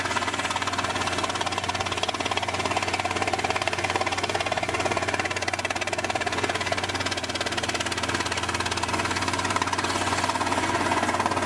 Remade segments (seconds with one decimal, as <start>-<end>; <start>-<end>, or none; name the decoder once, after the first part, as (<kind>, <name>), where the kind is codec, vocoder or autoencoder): 0.0-7.2 (vocoder, Vocos); 8.9-11.5